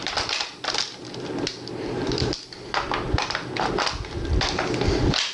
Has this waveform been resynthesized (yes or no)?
no